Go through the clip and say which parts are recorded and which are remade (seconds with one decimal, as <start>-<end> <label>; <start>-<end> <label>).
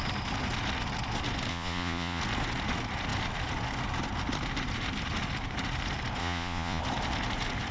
0.0-1.5 recorded; 1.5-2.2 remade; 2.2-6.2 recorded; 6.2-6.8 remade; 6.8-7.7 recorded